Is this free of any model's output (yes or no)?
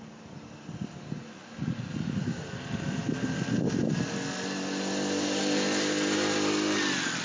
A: yes